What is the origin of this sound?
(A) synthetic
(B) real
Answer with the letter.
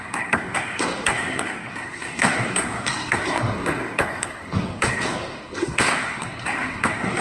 A